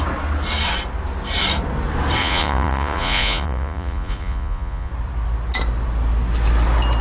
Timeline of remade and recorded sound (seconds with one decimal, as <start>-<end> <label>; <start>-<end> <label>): 0.0-2.2 recorded; 2.2-4.9 remade; 4.9-7.0 recorded